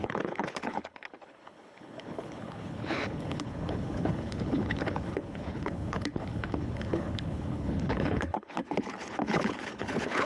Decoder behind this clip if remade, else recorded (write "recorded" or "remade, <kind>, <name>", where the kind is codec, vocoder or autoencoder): remade, codec, HILCodec